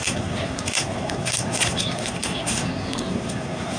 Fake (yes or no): yes